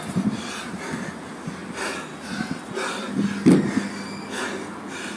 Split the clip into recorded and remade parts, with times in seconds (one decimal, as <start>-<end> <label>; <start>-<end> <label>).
0.0-5.2 recorded